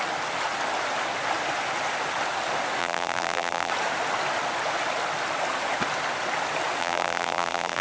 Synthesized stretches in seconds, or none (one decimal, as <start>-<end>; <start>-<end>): 2.8-3.7; 6.8-7.8